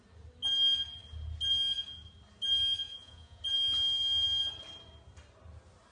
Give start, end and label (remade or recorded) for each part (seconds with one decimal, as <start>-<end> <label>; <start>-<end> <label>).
0.0-2.8 recorded; 2.8-3.4 remade; 3.4-5.9 recorded

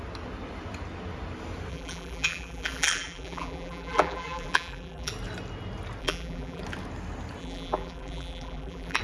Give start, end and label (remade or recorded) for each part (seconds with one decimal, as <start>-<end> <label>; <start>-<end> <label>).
0.0-1.7 recorded; 1.7-5.1 remade; 5.1-6.0 recorded; 6.0-6.6 remade; 6.6-7.4 recorded; 7.4-9.0 remade

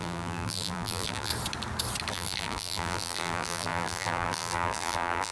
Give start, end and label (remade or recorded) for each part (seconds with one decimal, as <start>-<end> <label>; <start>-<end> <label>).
0.0-1.3 remade; 1.3-2.1 recorded; 2.1-5.3 remade